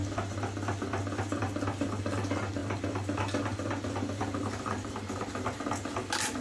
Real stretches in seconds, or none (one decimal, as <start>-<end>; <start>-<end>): 0.0-6.4